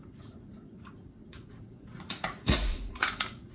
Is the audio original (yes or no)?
no